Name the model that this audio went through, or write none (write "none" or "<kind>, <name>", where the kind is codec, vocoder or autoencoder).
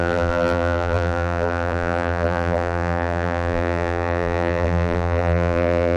vocoder, BigVGAN v2